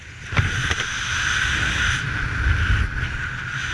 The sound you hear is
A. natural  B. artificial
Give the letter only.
A